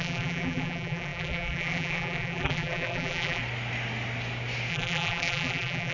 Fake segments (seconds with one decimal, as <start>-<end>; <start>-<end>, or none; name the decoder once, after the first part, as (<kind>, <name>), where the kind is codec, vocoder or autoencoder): 0.0-3.4 (vocoder, BigVGAN v2); 4.7-5.9